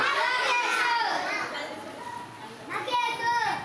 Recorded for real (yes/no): yes